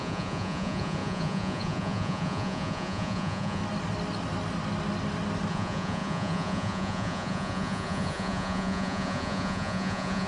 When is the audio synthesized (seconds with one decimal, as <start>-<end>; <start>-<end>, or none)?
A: 0.0-3.6; 5.5-10.3